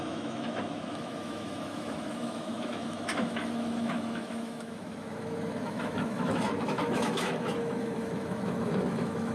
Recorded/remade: remade